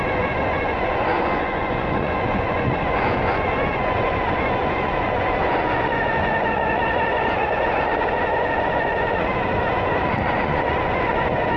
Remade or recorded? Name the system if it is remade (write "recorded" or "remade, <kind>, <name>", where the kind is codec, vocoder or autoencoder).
remade, vocoder, Vocos